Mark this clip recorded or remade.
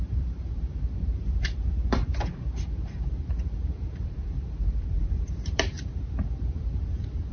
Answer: remade